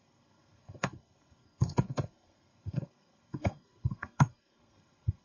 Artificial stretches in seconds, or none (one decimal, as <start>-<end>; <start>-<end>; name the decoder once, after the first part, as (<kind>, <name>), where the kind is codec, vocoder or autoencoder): 0.0-5.2 (codec, SNAC)